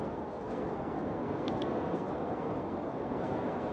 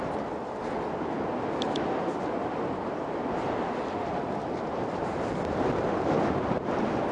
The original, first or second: second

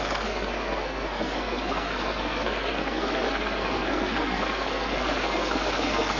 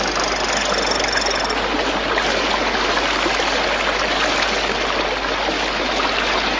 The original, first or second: second